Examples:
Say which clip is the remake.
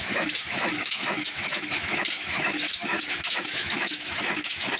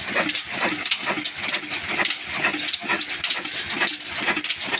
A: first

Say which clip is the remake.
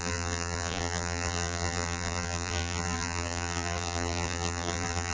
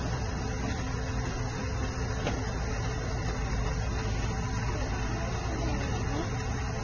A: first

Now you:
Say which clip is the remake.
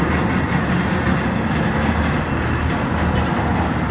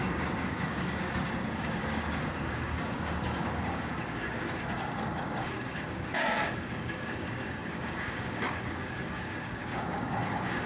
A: second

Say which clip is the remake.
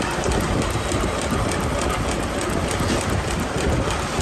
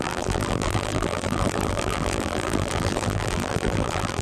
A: second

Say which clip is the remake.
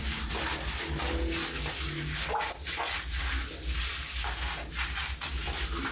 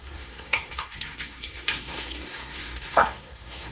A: second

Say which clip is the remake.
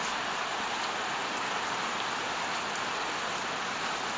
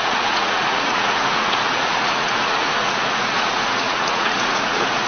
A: second